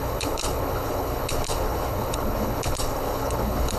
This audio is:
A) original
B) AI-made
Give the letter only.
B